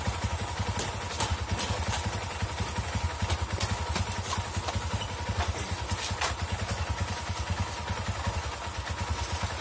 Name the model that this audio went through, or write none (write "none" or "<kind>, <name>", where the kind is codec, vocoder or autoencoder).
none